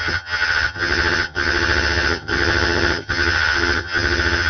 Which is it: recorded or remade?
remade